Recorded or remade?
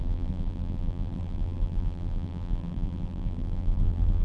remade